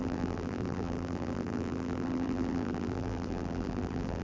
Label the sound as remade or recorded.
remade